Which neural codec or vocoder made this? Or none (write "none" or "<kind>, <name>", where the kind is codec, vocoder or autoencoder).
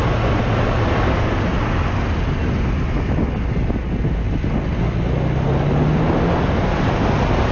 none